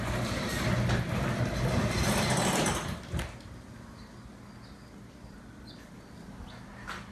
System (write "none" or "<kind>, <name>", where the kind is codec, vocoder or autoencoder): none